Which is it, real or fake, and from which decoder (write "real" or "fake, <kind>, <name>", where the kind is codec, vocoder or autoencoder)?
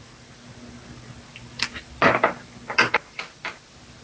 real